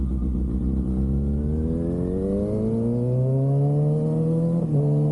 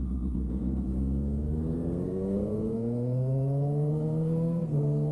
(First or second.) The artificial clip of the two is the second